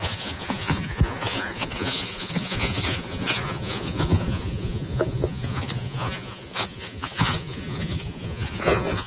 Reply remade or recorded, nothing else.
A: remade